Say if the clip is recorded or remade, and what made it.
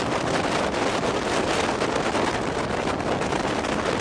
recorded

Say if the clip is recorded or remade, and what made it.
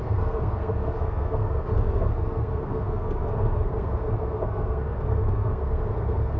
remade, codec, SNAC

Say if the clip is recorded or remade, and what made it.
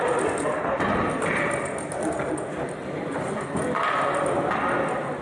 recorded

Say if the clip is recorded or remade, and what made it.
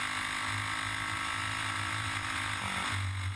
recorded